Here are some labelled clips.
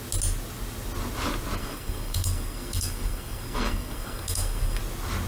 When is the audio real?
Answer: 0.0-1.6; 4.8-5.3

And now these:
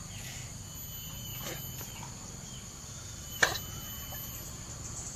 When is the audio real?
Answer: 0.0-5.2

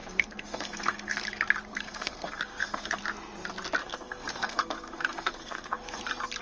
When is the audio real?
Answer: 1.2-1.7; 3.0-3.8; 6.0-6.4

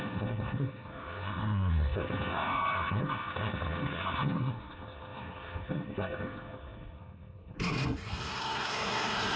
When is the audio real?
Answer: none

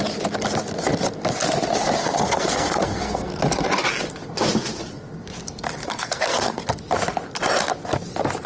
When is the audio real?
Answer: 0.0-2.0; 3.4-5.8; 6.6-8.5

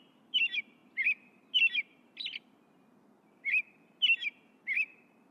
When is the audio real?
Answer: 0.0-5.3